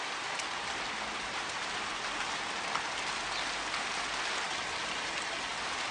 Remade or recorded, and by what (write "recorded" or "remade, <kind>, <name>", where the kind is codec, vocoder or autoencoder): recorded